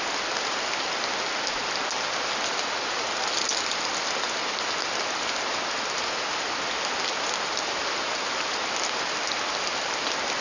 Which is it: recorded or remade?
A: recorded